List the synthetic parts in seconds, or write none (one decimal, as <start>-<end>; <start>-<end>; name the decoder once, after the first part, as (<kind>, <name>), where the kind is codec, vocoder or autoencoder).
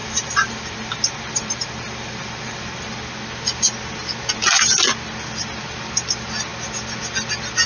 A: 0.0-2.8 (vocoder, BigVGAN v2)